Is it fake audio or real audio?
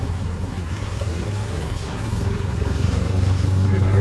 fake